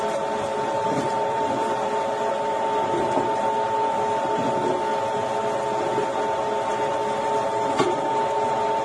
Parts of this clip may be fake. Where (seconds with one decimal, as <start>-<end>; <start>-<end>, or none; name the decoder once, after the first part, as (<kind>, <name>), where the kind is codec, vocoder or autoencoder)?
0.5-2.0 (vocoder, BigVGAN v2)